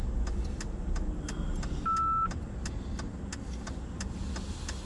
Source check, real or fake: real